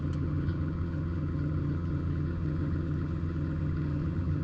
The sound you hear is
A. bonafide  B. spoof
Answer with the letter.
B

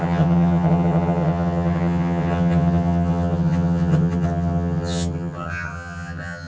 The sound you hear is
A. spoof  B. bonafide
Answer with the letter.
A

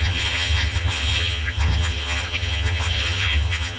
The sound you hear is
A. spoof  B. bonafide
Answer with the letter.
A